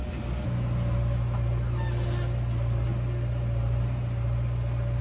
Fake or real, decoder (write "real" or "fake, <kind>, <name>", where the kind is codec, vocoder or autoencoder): real